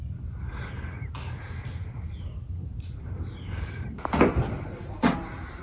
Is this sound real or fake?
real